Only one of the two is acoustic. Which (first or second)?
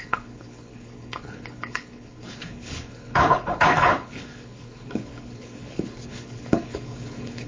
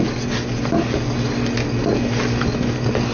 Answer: second